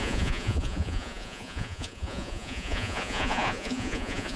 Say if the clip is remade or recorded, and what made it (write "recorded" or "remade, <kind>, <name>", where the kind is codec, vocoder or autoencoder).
remade, vocoder, Vocos